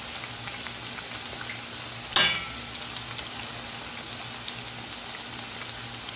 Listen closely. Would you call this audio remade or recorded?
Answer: recorded